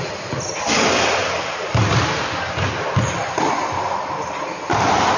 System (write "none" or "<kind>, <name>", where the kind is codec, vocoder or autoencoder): none